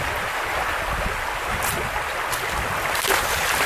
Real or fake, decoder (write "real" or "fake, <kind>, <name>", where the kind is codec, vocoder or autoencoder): real